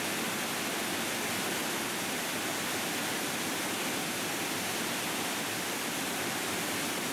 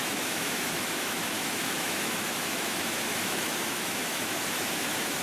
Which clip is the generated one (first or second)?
second